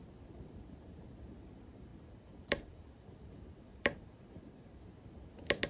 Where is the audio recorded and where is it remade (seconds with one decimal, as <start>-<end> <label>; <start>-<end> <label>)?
0.0-0.9 remade; 0.9-1.9 recorded; 1.9-5.3 remade; 5.3-5.7 recorded